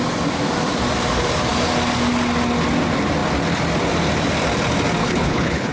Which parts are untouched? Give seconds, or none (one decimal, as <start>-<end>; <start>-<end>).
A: 0.0-5.0